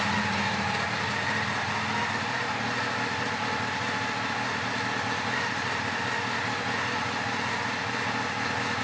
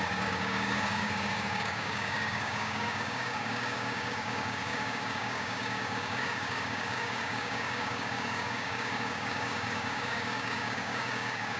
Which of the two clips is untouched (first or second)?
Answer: first